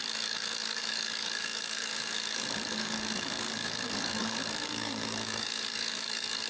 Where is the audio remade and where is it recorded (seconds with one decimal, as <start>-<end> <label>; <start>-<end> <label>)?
0.0-6.5 remade